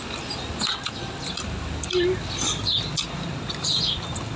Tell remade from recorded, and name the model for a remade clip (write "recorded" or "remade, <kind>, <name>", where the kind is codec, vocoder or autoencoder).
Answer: recorded